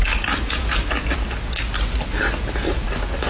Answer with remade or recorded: recorded